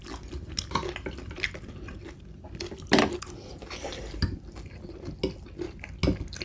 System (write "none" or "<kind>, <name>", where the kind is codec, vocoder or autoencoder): none